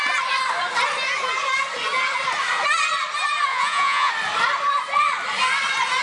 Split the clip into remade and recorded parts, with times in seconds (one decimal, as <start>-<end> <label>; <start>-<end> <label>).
0.0-3.5 recorded; 3.5-4.1 remade; 4.1-6.0 recorded